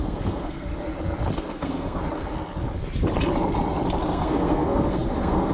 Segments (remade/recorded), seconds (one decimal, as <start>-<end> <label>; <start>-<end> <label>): 0.0-0.7 remade; 0.7-1.4 recorded; 1.4-2.0 remade; 2.0-4.1 recorded; 4.1-5.5 remade